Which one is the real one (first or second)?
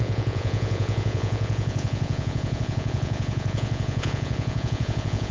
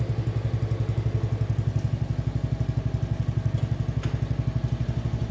second